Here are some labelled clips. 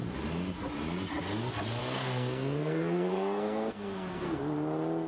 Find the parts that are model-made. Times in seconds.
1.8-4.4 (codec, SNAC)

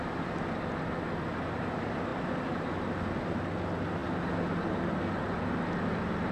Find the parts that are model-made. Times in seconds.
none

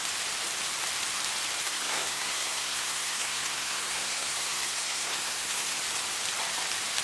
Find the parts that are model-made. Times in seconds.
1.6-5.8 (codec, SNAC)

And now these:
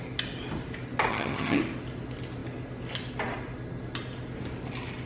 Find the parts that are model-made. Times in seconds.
1.1-1.6 (vocoder, HiFi-GAN)